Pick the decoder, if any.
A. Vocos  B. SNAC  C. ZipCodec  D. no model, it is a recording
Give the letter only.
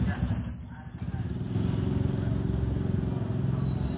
D